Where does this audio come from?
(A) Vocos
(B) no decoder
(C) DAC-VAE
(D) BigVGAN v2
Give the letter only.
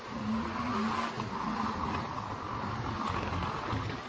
B